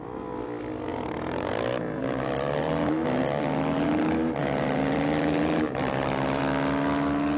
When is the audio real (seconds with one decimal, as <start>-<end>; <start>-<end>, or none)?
0.0-0.9; 1.5-2.0; 4.0-4.4; 6.4-7.4